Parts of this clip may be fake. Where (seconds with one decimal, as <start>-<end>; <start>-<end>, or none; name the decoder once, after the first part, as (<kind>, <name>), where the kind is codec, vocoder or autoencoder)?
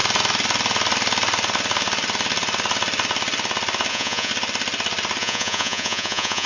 3.9-4.3 (vocoder, Vocos); 5.2-6.5